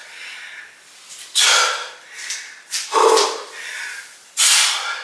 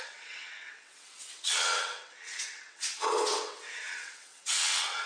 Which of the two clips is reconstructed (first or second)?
second